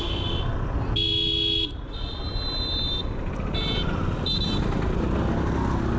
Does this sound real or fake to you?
real